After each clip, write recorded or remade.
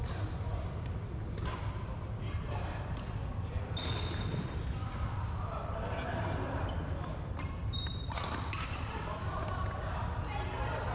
recorded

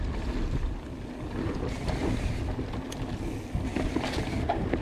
recorded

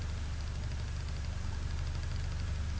recorded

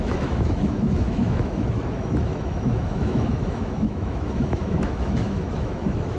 remade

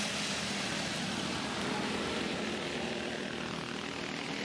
recorded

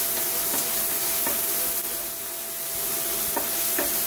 recorded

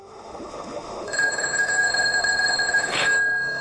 remade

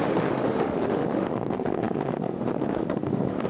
remade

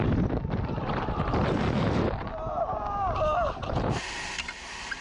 recorded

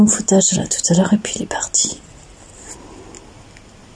recorded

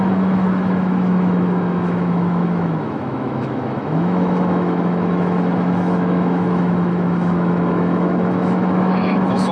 remade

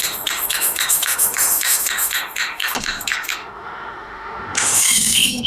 remade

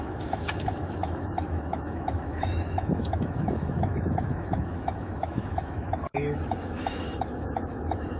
remade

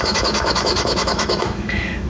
remade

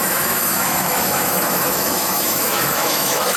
remade